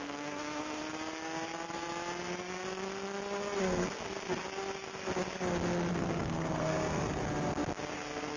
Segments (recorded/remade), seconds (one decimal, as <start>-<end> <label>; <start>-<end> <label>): 0.0-0.8 remade; 0.8-3.6 recorded; 3.6-4.4 remade; 4.4-5.9 recorded; 5.9-7.2 remade; 7.2-7.9 recorded; 7.9-8.4 remade